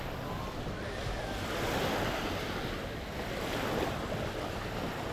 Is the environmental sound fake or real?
real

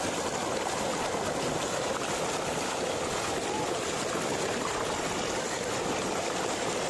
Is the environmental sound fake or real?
real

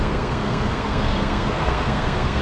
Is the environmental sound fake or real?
fake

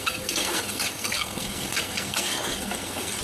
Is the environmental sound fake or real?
fake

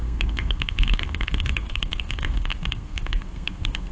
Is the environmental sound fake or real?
fake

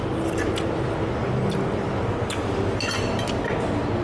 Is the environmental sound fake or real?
real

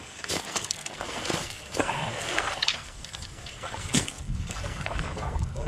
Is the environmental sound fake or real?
fake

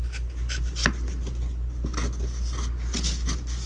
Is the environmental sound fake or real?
real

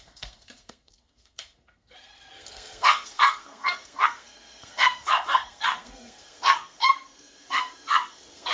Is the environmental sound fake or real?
fake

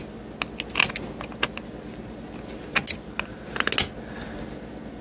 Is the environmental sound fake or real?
real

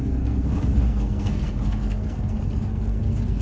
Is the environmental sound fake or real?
fake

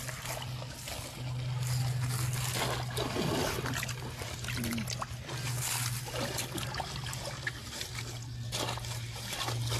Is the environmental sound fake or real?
real